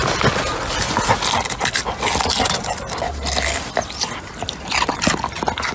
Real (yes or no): yes